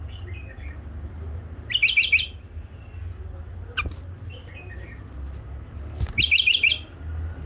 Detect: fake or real real